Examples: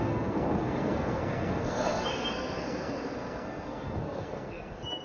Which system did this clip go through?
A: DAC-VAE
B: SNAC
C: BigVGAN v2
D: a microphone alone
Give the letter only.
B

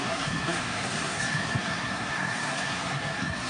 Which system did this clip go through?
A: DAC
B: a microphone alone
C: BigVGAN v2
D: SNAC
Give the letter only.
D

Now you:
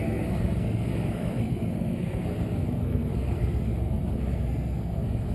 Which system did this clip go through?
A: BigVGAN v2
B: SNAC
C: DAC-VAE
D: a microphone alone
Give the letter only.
B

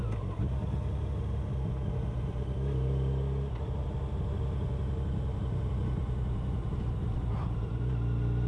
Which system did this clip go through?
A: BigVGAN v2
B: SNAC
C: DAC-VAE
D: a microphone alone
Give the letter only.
D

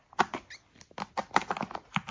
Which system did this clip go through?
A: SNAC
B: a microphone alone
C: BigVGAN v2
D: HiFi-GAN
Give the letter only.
B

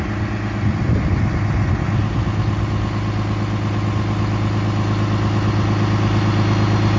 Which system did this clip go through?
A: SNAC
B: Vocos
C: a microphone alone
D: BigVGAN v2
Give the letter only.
C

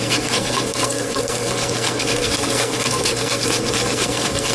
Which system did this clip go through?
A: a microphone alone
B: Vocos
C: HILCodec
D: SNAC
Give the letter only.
D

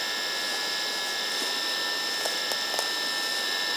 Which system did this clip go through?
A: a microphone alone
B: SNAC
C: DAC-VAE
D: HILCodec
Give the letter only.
A